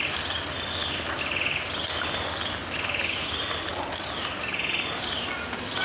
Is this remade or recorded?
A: recorded